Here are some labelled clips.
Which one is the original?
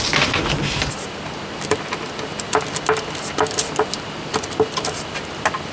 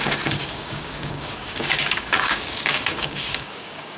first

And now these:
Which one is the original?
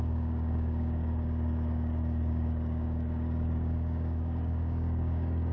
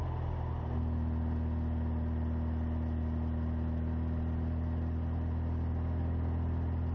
second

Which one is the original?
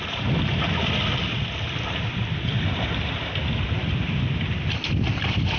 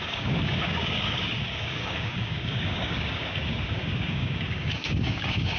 first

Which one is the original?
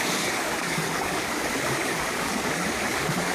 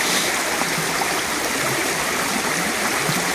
second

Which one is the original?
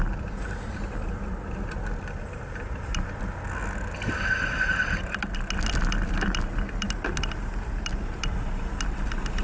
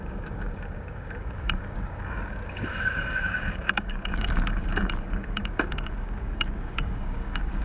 first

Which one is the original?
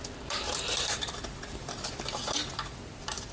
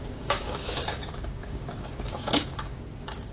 first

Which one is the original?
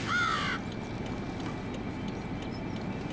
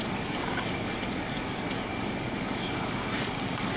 first